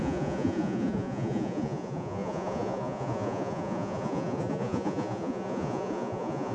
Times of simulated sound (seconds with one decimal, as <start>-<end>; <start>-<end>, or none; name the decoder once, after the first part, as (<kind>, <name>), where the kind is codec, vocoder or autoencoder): 0.0-6.5 (vocoder, Vocos)